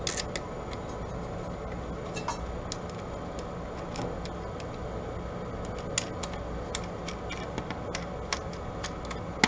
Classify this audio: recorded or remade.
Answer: recorded